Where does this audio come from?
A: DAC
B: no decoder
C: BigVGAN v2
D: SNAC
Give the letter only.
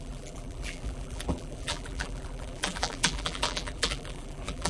C